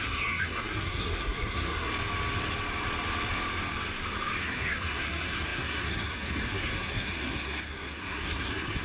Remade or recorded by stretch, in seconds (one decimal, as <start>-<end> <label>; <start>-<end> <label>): 0.0-1.9 remade; 1.9-4.4 recorded; 4.4-8.8 remade